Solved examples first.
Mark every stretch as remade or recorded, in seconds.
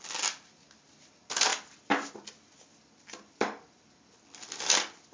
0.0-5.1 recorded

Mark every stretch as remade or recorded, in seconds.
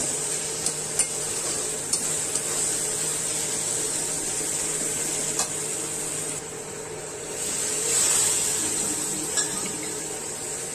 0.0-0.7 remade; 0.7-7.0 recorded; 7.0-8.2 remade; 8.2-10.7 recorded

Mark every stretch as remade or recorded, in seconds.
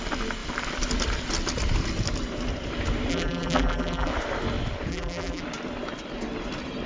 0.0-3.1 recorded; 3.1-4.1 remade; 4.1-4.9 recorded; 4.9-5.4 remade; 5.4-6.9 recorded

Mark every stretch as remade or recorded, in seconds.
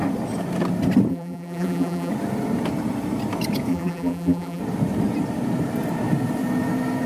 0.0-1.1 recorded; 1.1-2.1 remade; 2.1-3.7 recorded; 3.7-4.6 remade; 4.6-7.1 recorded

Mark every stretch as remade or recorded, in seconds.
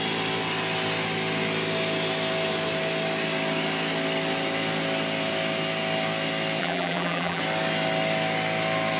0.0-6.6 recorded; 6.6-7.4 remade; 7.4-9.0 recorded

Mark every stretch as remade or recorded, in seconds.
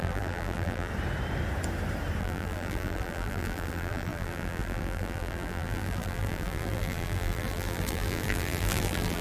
0.0-0.9 remade; 0.9-2.2 recorded; 2.2-9.2 remade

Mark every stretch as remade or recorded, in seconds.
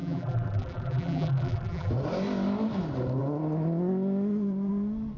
0.0-1.9 remade; 1.9-5.2 recorded